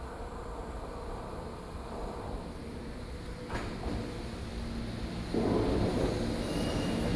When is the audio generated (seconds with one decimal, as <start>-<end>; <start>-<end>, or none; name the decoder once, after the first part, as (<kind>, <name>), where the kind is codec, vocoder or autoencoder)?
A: none